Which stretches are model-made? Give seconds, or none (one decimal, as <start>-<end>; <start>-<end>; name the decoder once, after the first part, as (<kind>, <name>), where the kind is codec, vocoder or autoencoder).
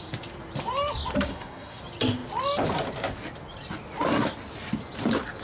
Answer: 1.3-1.8 (codec, SNAC)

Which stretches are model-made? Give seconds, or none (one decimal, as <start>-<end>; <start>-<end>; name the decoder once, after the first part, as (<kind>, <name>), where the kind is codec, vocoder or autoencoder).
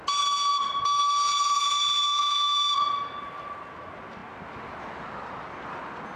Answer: none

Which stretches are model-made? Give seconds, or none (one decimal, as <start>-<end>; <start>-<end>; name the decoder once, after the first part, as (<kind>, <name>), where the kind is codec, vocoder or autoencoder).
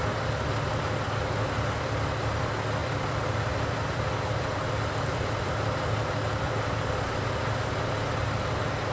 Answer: 0.0-0.5 (vocoder, BigVGAN v2); 2.8-7.2